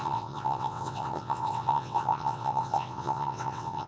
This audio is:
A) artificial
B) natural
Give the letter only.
A